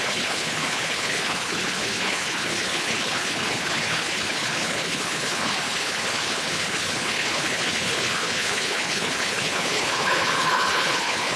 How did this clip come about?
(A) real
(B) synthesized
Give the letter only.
B